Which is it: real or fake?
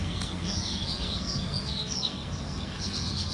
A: fake